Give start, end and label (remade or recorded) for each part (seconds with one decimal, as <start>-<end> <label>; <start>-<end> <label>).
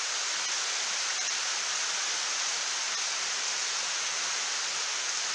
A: 0.0-5.3 recorded